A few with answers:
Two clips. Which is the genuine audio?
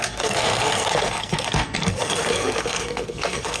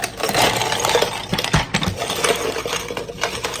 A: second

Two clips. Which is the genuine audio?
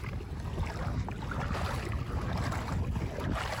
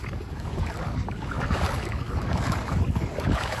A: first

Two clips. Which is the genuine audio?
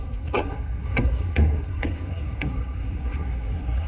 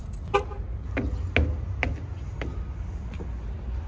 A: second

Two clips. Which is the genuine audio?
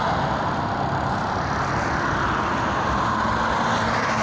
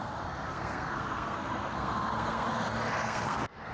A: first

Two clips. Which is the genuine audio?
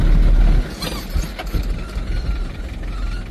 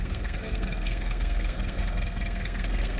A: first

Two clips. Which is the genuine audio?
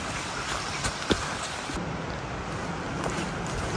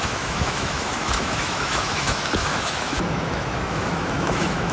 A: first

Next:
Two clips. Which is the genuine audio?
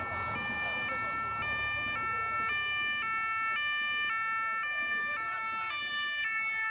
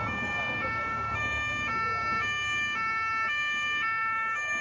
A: first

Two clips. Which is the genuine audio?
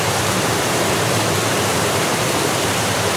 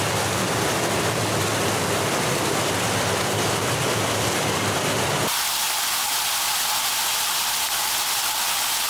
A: second